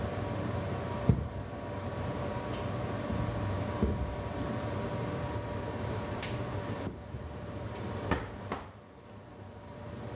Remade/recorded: remade